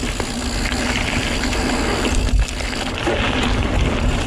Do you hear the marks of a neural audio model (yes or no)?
no